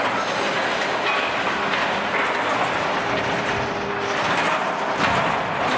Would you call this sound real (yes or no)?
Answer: yes